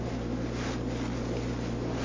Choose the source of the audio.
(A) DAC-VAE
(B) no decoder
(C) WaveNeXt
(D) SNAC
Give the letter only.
B